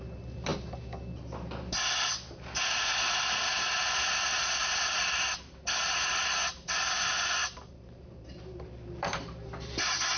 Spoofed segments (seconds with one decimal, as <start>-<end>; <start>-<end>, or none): 7.4-9.5